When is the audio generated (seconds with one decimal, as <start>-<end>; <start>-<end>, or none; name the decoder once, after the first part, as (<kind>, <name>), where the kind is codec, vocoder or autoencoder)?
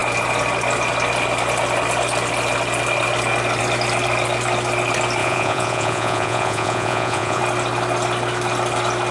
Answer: 5.2-7.4 (vocoder, Vocos)